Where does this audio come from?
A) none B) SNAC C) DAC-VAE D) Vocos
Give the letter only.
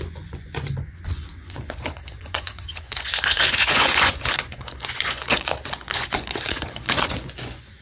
D